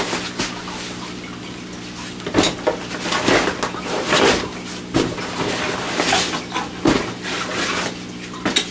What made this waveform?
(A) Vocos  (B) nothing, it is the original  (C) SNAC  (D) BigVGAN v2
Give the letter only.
B